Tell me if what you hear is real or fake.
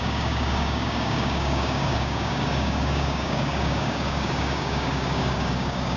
fake